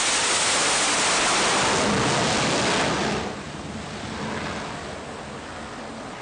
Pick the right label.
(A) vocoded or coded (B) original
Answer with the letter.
B